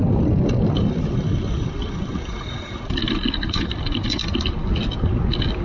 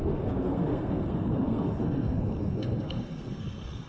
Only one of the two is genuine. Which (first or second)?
first